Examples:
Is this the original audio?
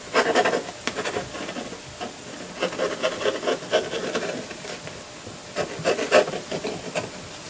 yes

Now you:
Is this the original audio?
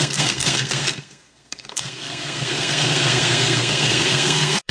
no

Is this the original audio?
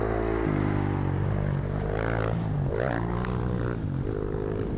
yes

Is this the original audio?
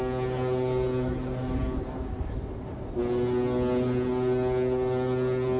yes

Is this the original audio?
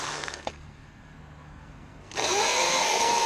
no